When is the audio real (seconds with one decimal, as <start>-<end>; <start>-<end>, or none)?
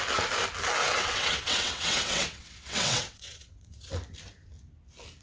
0.0-0.8; 3.9-5.2